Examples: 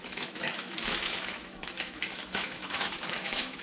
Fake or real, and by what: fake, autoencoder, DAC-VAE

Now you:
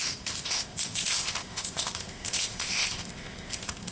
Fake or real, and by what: fake, codec, ZipCodec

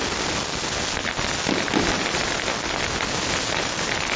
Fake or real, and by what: real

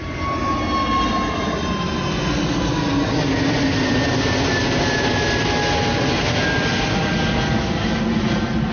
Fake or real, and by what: real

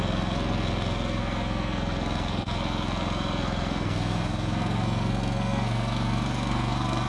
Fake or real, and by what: fake, codec, SNAC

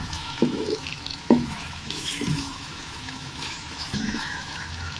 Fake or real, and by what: fake, autoencoder, DAC-VAE